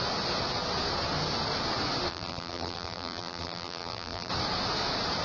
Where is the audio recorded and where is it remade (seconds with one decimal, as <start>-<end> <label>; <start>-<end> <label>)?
0.0-2.1 recorded; 2.1-4.3 remade; 4.3-5.2 recorded